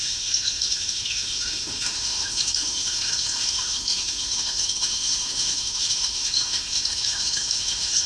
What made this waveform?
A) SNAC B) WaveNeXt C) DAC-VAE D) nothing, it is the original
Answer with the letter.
C